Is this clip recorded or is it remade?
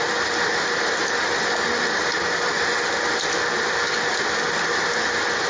recorded